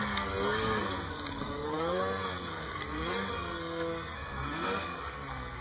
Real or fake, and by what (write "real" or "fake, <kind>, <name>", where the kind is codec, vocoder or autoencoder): fake, codec, SNAC